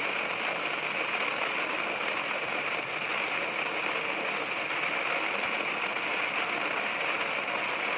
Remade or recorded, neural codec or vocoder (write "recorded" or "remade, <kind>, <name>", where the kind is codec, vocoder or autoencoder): recorded